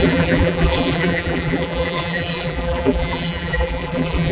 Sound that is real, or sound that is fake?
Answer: fake